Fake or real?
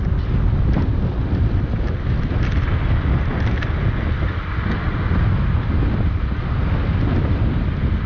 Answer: real